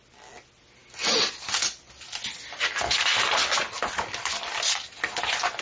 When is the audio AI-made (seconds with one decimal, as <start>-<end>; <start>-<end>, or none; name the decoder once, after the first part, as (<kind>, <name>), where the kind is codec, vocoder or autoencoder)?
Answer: none